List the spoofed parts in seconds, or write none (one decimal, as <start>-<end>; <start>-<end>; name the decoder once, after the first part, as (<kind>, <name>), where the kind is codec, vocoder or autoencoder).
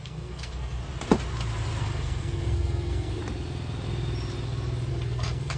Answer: 0.0-0.8 (codec, SNAC); 1.8-3.2; 4.9-5.6